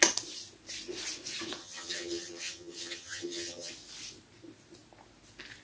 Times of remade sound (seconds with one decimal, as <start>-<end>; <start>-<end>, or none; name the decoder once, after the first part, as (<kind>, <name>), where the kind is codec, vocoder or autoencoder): 1.6-3.7 (vocoder, HiFi-GAN)